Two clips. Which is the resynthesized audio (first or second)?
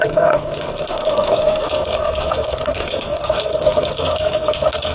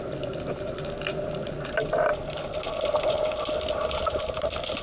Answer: first